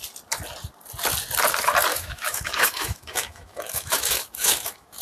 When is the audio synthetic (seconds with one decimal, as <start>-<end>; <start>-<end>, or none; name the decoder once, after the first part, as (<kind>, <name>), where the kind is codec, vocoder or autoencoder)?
1.9-5.0 (autoencoder, DAC-VAE)